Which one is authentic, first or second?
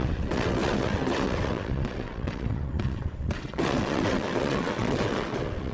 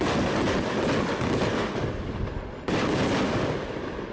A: second